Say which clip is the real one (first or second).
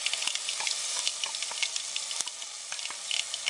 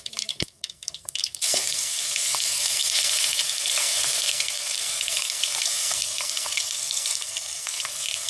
first